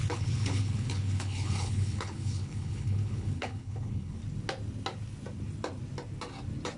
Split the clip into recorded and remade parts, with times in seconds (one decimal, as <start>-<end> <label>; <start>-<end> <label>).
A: 0.0-4.2 remade; 4.2-6.8 recorded